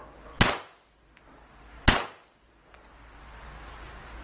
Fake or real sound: real